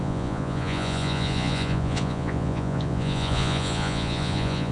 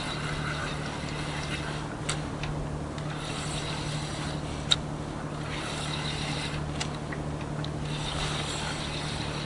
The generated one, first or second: first